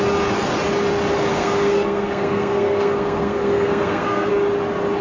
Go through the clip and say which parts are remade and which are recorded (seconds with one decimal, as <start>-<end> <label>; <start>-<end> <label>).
0.0-1.3 recorded; 1.3-4.3 remade; 4.3-5.0 recorded